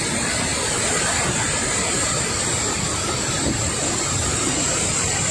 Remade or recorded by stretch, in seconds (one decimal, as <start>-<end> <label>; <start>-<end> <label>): 0.0-5.3 recorded